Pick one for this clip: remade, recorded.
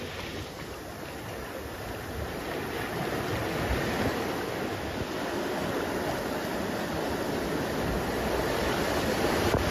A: recorded